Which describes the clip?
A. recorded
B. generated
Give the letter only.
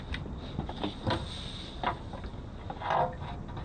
A